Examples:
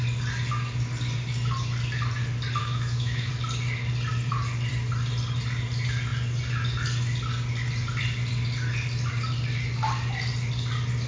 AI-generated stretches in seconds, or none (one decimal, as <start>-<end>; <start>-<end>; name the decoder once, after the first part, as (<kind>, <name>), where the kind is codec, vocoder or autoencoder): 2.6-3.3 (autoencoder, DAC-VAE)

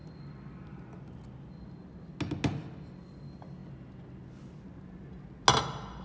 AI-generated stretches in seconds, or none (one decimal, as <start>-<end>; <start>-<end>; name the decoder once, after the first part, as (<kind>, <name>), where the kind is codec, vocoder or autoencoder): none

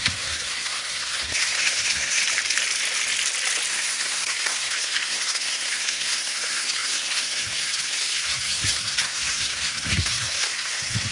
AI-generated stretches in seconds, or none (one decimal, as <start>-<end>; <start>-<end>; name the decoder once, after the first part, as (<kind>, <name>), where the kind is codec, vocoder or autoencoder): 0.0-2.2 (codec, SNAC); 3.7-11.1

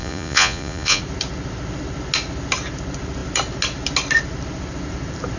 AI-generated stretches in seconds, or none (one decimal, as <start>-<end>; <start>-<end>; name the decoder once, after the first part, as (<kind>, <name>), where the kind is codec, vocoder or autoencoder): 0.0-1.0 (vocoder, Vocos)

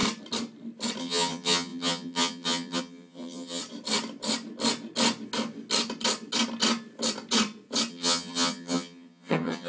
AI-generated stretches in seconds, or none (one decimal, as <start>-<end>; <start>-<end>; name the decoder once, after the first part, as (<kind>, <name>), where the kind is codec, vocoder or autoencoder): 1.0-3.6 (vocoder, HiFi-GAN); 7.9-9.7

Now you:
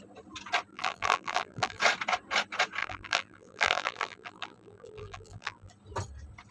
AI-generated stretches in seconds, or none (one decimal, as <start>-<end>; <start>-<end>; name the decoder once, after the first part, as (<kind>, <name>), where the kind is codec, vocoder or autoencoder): 0.7-1.8 (vocoder, BigVGAN v2); 2.8-5.7

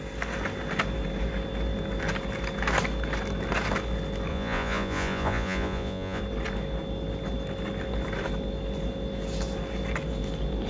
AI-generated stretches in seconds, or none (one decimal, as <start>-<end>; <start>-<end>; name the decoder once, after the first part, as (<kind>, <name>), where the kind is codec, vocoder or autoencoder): 4.3-6.2 (vocoder, Vocos)